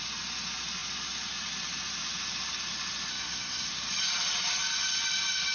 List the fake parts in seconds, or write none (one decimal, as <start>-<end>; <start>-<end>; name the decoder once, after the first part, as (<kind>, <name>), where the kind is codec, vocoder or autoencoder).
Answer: 3.1-3.7 (codec, SNAC)